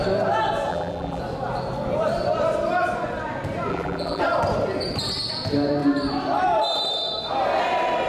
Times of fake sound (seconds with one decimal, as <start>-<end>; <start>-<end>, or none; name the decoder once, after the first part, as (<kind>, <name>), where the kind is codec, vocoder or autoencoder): 0.7-1.2 (vocoder, BigVGAN v2); 3.7-4.2